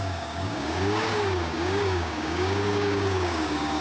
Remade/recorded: remade